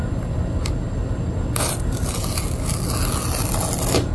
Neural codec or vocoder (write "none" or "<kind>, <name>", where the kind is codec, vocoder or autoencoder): none